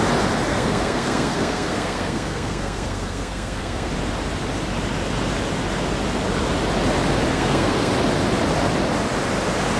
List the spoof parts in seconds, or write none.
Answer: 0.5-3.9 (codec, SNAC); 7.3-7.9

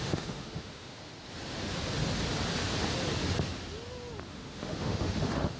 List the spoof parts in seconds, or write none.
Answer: 0.0-1.0 (autoencoder, DAC-VAE); 4.3-5.6

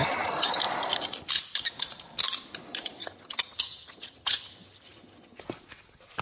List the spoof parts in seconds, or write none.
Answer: 0.0-0.6 (vocoder, HiFi-GAN); 3.0-5.4

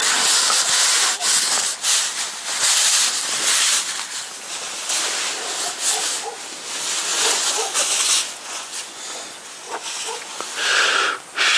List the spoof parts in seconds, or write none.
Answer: 7.1-10.5 (vocoder, Vocos)

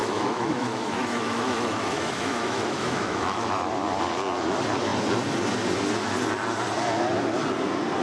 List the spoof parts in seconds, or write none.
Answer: 0.0-3.7 (autoencoder, DAC-VAE)

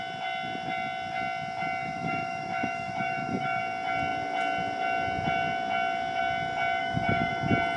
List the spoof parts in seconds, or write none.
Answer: 1.8-3.6 (autoencoder, DAC-VAE); 6.8-7.3

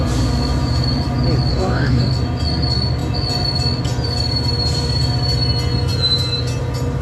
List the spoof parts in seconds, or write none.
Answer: 1.5-2.1 (codec, DAC)